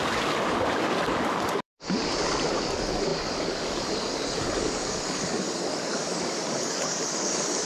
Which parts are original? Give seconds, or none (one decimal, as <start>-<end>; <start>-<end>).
2.0-2.5